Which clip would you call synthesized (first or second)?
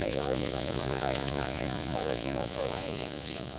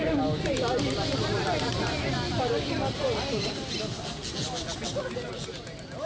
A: first